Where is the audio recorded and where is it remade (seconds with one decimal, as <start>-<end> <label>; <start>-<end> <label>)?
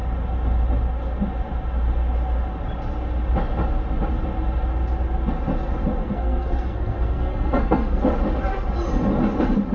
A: 0.0-6.0 recorded; 6.0-8.0 remade; 8.0-9.7 recorded